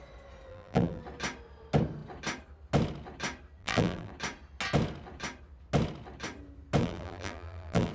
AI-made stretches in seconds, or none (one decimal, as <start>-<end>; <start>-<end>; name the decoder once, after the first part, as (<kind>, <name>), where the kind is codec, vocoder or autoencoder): 0.5-1.0 (vocoder, BigVGAN v2); 3.6-4.1; 6.8-7.9